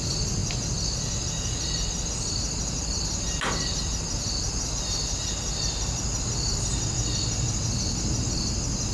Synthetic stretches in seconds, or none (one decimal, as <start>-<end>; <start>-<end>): none

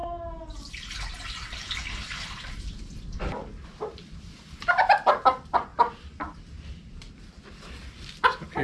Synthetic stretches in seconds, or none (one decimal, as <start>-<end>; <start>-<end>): 0.0-2.7; 5.7-6.7

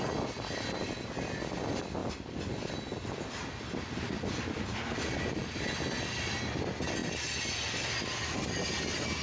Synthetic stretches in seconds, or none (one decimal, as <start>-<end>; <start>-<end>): 2.0-2.7

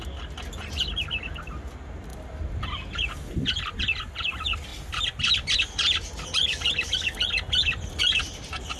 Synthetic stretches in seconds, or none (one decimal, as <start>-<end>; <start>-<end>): 2.1-2.7

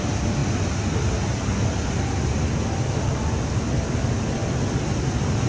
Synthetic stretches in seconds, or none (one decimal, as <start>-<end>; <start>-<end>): none

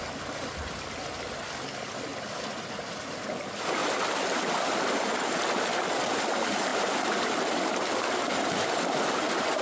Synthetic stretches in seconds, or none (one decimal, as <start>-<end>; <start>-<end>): none

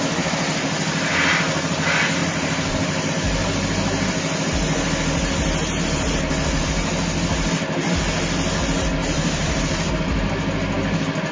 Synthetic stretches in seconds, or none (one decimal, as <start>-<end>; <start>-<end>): 2.2-3.1; 9.0-9.9